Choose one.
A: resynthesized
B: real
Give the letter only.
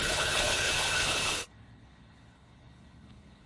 A